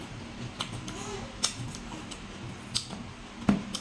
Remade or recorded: recorded